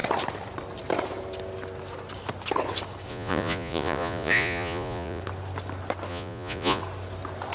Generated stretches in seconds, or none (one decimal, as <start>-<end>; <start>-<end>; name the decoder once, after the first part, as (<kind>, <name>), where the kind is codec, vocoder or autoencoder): 3.1-5.2 (vocoder, Vocos); 6.1-6.8